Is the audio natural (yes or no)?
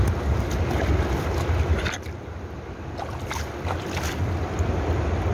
yes